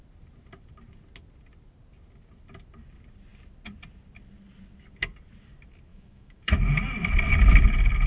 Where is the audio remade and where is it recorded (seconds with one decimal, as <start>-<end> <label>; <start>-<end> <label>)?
0.0-5.9 recorded; 5.9-6.7 remade; 6.7-8.1 recorded